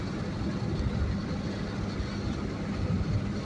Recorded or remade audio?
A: recorded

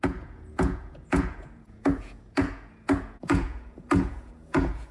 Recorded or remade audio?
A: remade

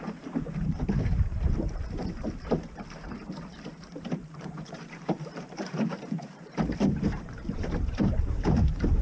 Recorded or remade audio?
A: remade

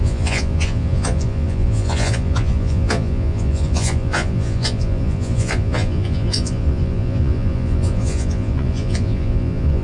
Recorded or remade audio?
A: remade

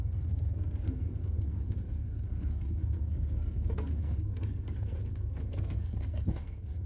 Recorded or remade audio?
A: remade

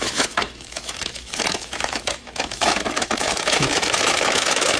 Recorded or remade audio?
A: remade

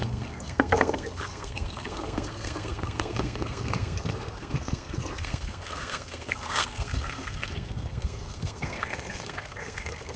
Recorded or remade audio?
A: remade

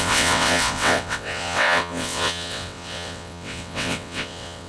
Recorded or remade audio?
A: remade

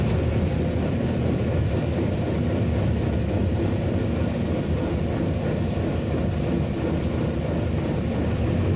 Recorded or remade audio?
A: recorded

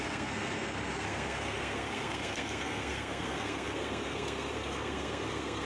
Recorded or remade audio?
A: remade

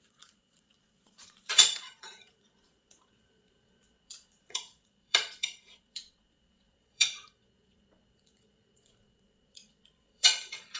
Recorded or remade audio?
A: remade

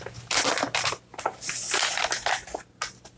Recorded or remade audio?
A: recorded